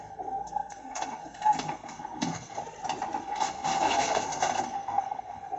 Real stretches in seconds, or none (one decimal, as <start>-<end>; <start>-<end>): 2.6-3.2